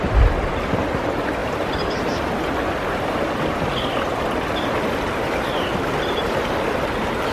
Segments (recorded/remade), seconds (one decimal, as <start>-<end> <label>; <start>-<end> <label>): 0.0-7.3 recorded